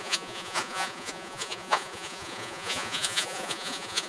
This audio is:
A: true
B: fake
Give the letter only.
B